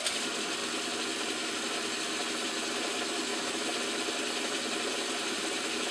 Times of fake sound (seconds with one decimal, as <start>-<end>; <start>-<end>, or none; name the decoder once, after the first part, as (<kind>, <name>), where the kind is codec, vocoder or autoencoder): 3.3-3.8 (autoencoder, DAC-VAE)